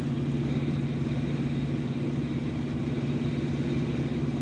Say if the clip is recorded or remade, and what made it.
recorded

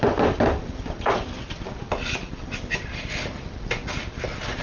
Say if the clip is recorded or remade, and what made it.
recorded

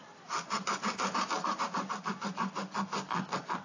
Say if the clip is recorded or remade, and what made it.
recorded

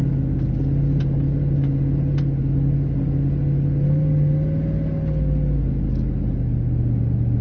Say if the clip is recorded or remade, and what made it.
recorded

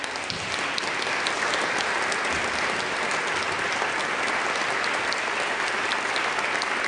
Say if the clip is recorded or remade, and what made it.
recorded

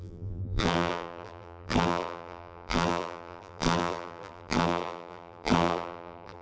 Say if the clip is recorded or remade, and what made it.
remade, vocoder, BigVGAN v2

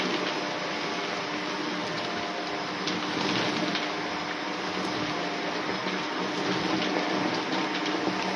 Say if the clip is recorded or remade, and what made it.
recorded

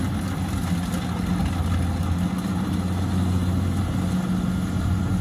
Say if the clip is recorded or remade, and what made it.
recorded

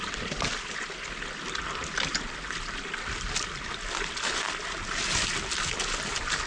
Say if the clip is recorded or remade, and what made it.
recorded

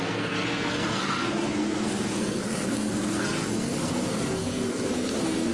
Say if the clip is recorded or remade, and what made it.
remade, codec, SNAC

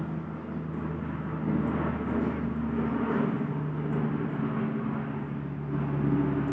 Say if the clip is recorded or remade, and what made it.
recorded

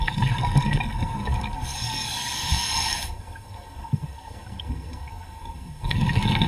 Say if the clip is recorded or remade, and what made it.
remade, codec, SNAC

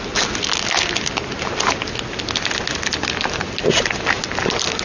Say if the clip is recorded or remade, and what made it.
recorded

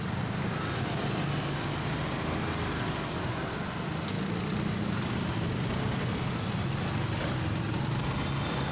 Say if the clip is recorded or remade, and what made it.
recorded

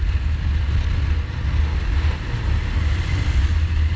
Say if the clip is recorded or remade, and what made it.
recorded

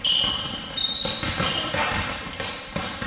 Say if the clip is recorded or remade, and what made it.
remade, vocoder, BigVGAN v2